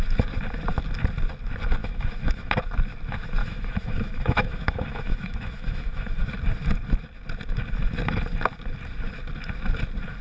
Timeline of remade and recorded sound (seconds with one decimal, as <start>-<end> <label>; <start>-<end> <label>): 0.0-1.8 recorded; 1.8-2.5 remade; 2.5-3.4 recorded; 3.4-6.2 remade; 6.2-10.2 recorded